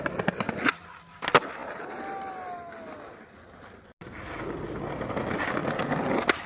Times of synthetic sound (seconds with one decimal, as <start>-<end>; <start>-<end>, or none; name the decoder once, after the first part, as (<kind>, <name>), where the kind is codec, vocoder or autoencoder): none